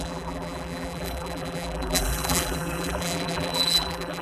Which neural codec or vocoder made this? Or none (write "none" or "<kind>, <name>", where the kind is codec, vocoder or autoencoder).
vocoder, BigVGAN v2